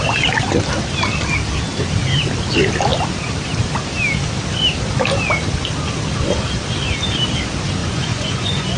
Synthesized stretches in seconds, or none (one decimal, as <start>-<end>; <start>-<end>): 7.8-8.8

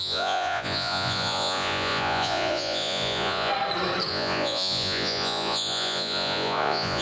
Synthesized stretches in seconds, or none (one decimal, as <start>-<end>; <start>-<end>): 0.0-3.5; 4.1-7.0

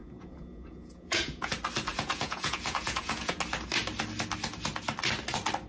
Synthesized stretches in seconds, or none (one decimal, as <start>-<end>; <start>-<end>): 0.0-1.5; 1.9-3.4

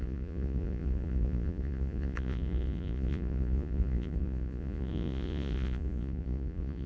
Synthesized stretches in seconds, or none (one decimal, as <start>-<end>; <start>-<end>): 0.0-6.9

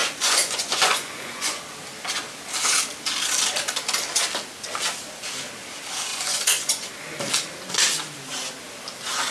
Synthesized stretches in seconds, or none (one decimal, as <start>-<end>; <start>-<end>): 0.0-1.6; 6.1-6.9

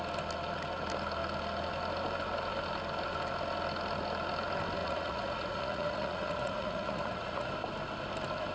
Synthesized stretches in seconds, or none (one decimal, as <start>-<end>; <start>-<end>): 4.8-7.5

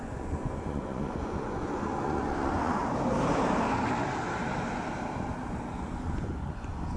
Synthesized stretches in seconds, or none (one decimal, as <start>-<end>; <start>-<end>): 0.0-2.8; 5.7-7.0

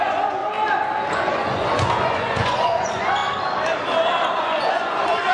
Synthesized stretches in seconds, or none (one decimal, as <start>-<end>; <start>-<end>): 0.0-0.4; 1.1-3.2; 4.3-5.3